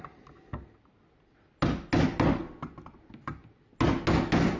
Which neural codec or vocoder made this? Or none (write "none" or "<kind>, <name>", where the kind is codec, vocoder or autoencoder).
none